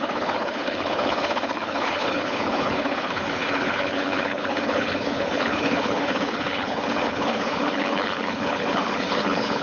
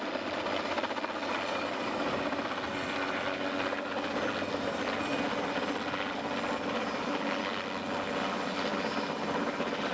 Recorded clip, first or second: second